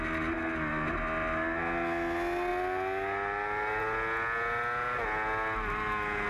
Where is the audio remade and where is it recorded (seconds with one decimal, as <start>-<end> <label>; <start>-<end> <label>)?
0.0-6.3 recorded